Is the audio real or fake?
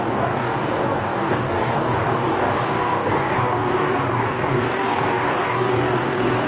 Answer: fake